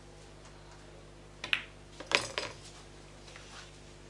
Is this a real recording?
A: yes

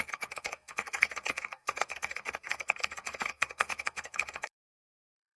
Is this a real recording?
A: no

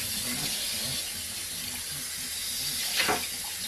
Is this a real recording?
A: yes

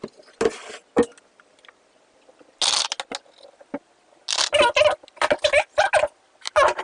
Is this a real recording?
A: yes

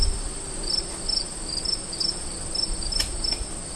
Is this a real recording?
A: yes